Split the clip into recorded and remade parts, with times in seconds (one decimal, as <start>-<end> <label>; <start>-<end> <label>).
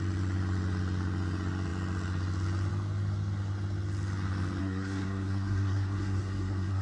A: 0.0-4.6 recorded; 4.6-6.8 remade